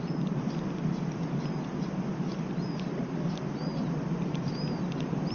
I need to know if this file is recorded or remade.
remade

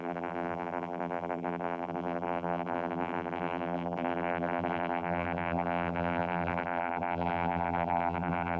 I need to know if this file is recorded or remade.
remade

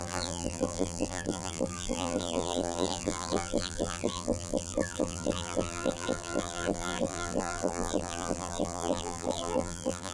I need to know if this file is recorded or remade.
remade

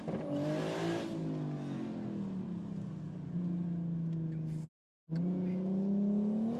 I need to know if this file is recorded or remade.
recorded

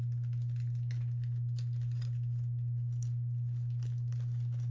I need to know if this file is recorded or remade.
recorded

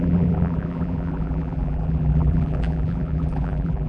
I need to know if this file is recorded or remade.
remade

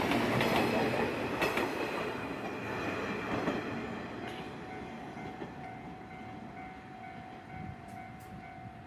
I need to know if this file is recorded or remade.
recorded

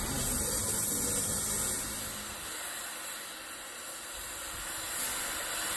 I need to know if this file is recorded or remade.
recorded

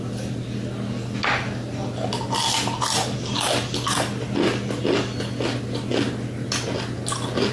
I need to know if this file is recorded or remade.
recorded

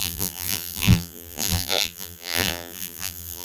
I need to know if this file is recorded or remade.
remade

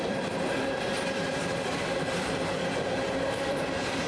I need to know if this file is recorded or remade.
remade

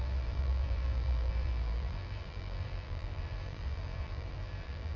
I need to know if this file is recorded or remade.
remade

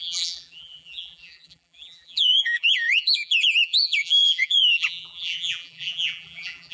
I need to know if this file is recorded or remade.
remade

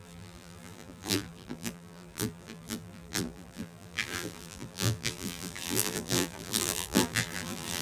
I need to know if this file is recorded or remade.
remade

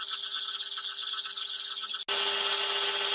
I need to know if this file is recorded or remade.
recorded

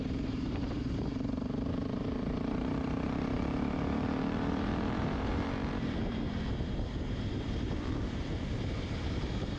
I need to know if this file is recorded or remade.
remade